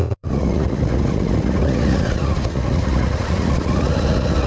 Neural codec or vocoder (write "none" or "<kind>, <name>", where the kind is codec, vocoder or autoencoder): vocoder, Vocos